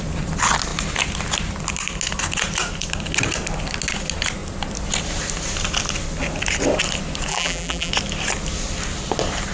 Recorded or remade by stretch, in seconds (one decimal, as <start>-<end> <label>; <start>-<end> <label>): 0.0-7.3 recorded; 7.3-7.9 remade; 7.9-9.5 recorded